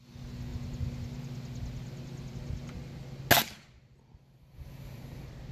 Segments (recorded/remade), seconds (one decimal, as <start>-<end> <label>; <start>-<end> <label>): 0.0-5.5 recorded